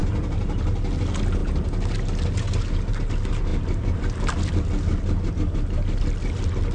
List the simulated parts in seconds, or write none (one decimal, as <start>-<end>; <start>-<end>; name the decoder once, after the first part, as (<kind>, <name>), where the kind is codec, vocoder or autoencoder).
none